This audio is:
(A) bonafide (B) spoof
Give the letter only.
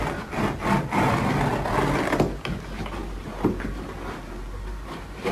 A